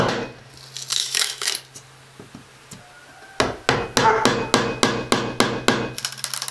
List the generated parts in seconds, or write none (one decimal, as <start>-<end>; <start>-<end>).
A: 0.9-1.5